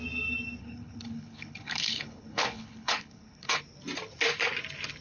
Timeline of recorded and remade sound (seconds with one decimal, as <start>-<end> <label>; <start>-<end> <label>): 0.0-0.6 recorded; 0.6-3.6 remade; 3.6-5.0 recorded